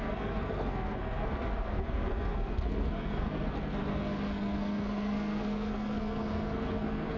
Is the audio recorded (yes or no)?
no